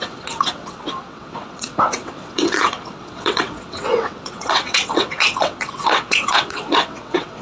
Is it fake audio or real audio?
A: fake